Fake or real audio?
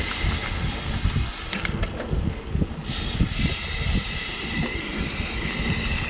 real